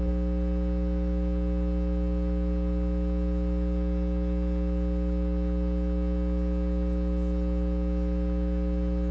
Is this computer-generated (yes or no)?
no